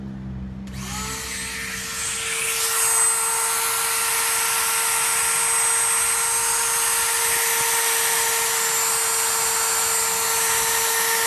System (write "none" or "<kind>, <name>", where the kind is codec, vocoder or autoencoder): none